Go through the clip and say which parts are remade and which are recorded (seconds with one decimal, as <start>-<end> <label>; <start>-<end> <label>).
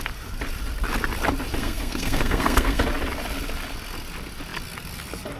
0.0-1.6 recorded; 1.6-2.8 remade; 2.8-5.4 recorded